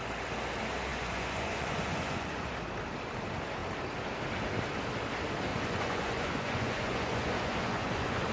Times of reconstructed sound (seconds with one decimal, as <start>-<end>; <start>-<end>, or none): 0.9-2.5; 5.5-8.3